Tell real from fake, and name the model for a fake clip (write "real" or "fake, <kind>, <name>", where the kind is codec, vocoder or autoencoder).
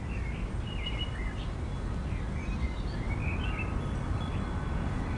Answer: real